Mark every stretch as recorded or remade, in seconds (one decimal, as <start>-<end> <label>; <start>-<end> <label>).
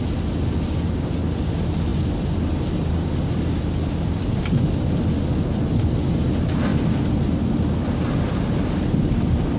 0.0-9.6 recorded